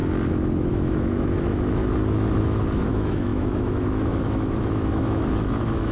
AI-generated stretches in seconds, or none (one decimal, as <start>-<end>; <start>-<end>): 0.7-1.8; 2.4-5.9